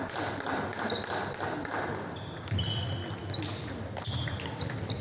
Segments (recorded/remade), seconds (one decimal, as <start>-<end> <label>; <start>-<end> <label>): 0.0-5.0 recorded